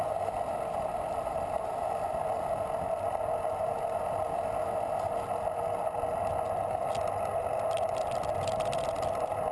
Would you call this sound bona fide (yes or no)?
yes